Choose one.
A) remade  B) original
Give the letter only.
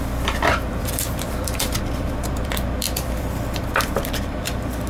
A